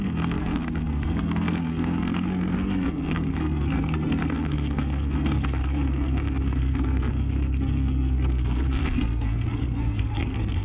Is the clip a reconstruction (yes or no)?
yes